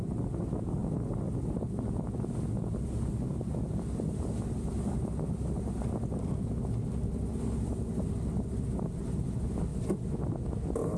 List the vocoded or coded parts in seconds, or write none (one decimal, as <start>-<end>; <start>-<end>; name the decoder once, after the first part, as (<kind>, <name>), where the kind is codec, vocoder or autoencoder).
none